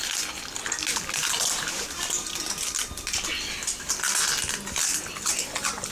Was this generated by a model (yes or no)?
no